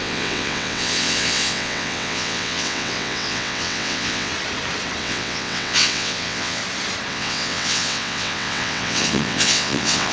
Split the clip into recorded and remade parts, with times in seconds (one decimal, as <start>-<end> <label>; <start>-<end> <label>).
0.0-4.3 remade; 4.3-5.0 recorded; 5.0-6.6 remade; 6.6-7.1 recorded; 7.1-10.1 remade